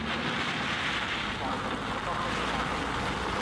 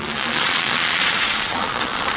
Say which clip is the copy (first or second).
second